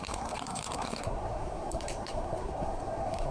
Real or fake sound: fake